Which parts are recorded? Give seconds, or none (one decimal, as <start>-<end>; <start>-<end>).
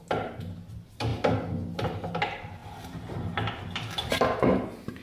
0.0-5.0